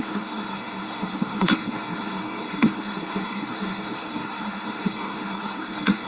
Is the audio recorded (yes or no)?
no